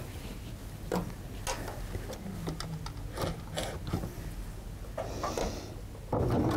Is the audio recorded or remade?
recorded